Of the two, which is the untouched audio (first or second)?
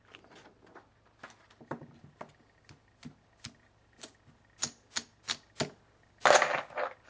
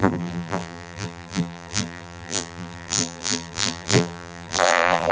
first